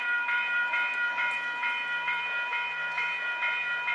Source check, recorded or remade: remade